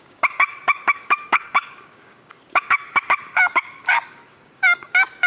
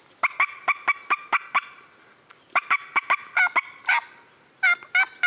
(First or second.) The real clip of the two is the second